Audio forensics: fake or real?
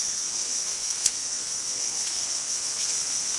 fake